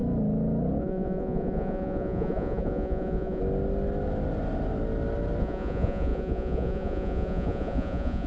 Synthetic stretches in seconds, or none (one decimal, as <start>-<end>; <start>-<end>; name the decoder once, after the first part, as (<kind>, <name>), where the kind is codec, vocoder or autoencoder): 0.8-3.4 (vocoder, Vocos); 5.4-8.3